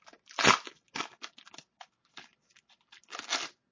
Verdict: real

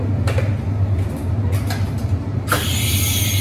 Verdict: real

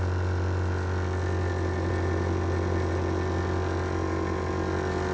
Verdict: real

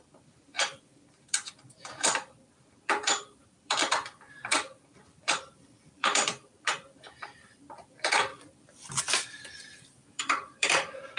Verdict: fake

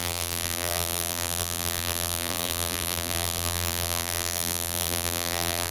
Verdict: fake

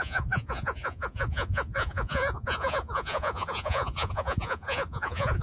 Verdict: fake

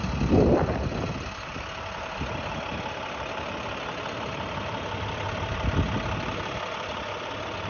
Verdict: real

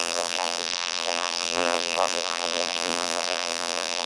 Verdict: fake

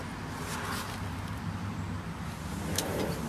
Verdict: real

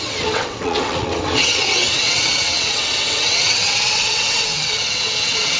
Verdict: fake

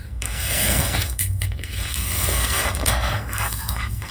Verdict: fake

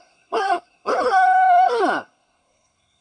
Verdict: fake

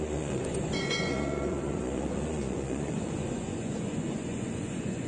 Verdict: fake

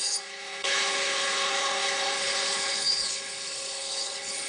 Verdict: fake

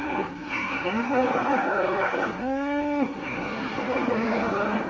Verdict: fake